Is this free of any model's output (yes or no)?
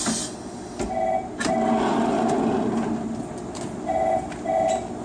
yes